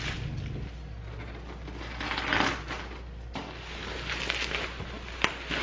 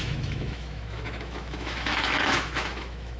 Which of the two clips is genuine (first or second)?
first